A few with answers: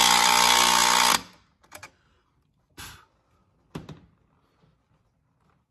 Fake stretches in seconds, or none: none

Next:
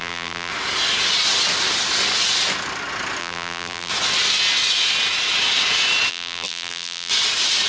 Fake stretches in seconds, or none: 0.0-0.5 (vocoder, BigVGAN v2); 3.2-3.9; 6.1-7.1

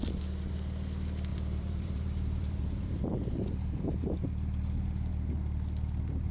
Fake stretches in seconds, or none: 1.3-5.1 (vocoder, BigVGAN v2)